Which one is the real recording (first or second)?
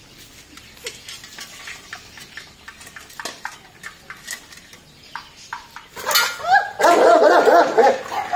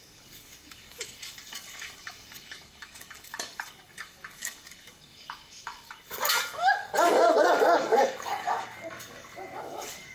first